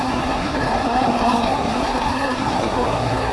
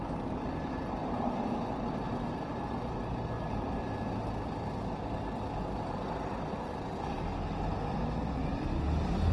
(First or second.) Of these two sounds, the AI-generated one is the first